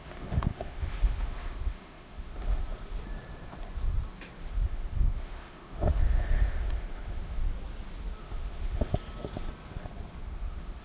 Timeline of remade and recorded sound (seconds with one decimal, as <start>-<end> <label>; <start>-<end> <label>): 0.0-2.6 remade; 2.6-4.4 recorded; 4.4-7.4 remade; 7.4-8.2 recorded; 8.2-8.9 remade; 8.9-10.2 recorded; 10.2-10.8 remade